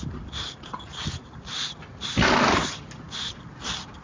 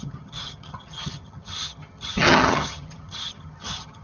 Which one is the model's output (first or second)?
second